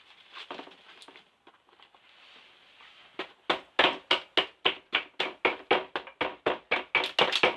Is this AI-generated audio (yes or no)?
no